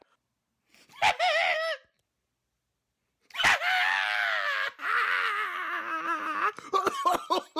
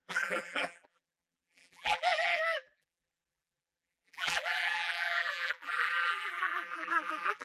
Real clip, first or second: first